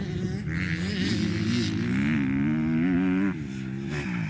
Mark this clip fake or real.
real